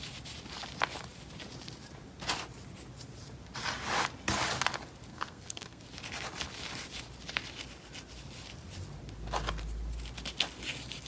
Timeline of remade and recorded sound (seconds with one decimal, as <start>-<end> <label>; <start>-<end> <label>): 0.0-5.1 recorded; 5.1-5.8 remade; 5.8-11.1 recorded